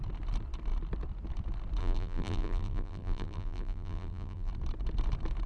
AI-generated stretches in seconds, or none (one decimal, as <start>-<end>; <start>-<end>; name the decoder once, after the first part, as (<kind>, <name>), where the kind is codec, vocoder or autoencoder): 1.8-4.5 (vocoder, BigVGAN v2)